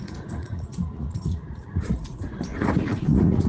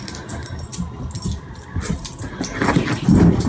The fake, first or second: first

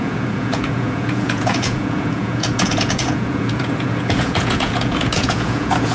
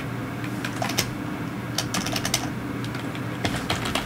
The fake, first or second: first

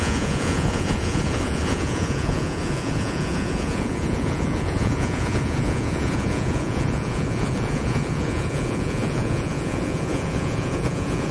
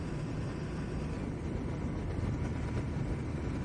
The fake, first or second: first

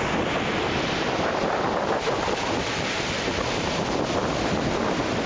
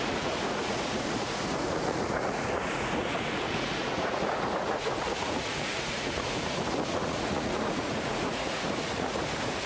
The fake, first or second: second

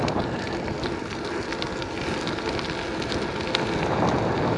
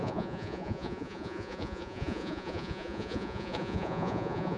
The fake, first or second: second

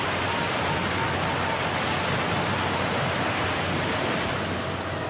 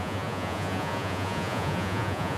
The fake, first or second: second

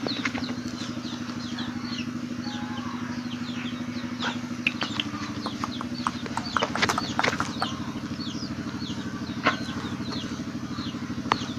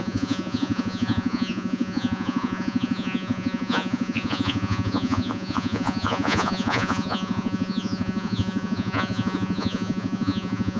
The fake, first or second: second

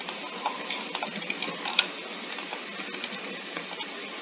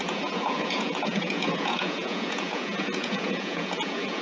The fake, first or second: second